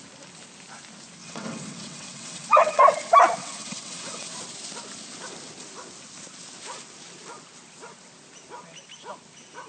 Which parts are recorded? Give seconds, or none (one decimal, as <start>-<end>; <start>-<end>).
0.0-1.2; 2.8-3.4; 4.3-9.7